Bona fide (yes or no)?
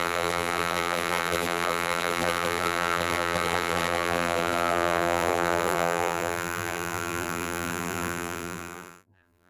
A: no